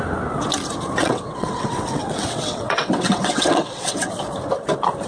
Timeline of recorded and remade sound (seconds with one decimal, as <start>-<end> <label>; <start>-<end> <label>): 0.0-1.0 recorded; 1.0-4.1 remade; 4.1-5.1 recorded